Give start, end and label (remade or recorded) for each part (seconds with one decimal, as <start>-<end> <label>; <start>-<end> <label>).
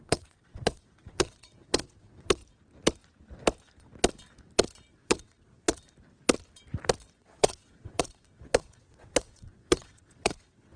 0.0-2.4 remade; 2.4-4.9 recorded; 4.9-5.8 remade; 5.8-7.2 recorded; 7.2-10.8 remade